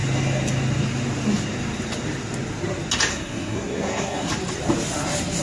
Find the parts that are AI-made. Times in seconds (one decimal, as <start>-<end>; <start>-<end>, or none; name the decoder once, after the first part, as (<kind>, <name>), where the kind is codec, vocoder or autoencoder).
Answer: 3.1-4.3 (codec, SNAC)